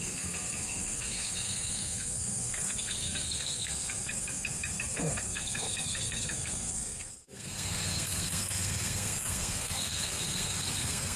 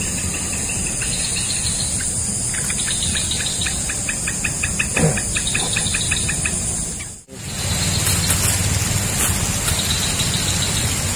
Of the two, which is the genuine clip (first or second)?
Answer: second